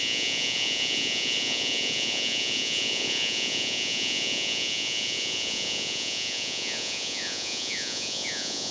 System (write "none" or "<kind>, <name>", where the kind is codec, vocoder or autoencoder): vocoder, Vocos